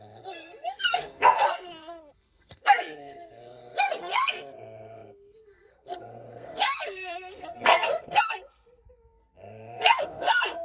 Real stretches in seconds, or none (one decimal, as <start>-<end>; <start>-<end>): none